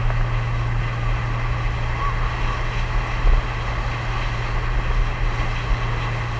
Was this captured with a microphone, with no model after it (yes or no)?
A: yes